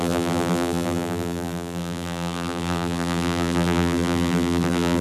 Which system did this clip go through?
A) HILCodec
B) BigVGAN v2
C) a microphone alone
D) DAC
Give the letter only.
B